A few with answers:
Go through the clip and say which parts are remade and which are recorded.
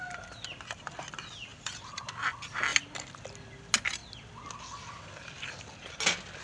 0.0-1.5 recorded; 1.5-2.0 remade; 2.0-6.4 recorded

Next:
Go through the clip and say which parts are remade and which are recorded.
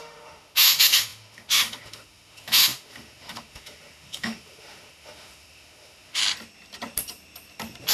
0.0-6.2 remade; 6.2-7.9 recorded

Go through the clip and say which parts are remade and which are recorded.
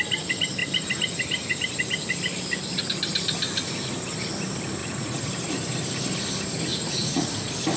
0.0-4.8 recorded; 4.8-5.3 remade; 5.3-6.7 recorded; 6.7-7.3 remade; 7.3-7.8 recorded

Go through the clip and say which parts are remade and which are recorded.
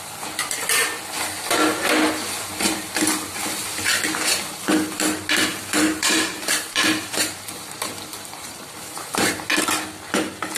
0.0-5.5 recorded; 5.5-9.5 remade; 9.5-10.6 recorded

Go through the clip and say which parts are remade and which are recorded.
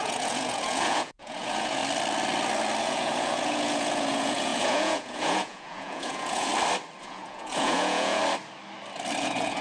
0.0-1.8 remade; 1.8-2.8 recorded; 2.8-6.5 remade; 6.5-7.0 recorded; 7.0-8.2 remade; 8.2-9.2 recorded; 9.2-9.6 remade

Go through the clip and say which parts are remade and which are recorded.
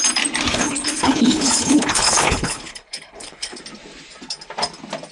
0.0-0.5 recorded; 0.5-3.6 remade; 3.6-5.1 recorded